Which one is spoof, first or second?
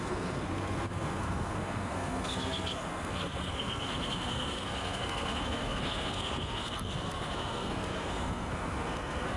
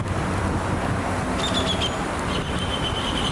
first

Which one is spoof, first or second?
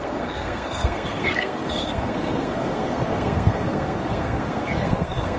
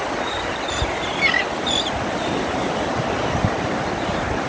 first